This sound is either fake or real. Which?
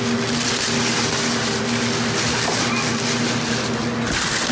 real